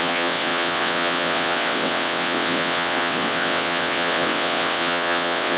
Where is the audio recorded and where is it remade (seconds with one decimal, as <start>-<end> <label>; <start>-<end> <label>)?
0.0-5.6 remade